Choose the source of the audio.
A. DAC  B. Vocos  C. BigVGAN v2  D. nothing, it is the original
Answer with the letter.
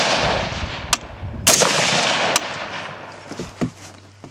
D